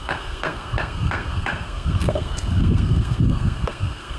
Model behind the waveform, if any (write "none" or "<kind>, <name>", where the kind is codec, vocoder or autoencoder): codec, SNAC